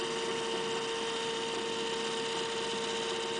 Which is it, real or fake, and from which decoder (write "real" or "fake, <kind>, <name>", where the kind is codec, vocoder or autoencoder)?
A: real